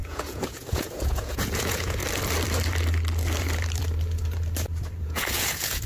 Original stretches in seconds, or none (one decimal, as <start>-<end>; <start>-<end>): 2.0-5.0